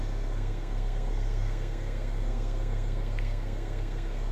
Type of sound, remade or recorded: remade